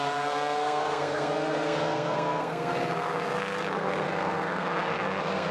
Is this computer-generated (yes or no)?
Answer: yes